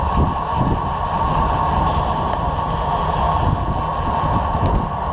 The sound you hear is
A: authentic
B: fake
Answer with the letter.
A